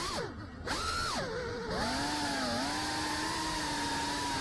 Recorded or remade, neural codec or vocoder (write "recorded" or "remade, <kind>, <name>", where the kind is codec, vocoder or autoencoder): recorded